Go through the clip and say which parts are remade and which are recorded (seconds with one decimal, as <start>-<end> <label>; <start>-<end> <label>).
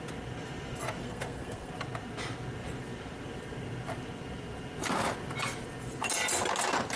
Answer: 0.0-1.0 recorded; 1.0-1.7 remade; 1.7-7.0 recorded